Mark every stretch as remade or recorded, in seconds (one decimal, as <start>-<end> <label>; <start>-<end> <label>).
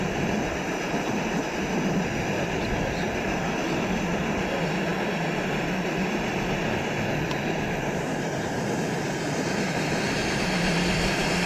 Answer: 0.0-4.9 remade; 4.9-7.2 recorded; 7.2-11.5 remade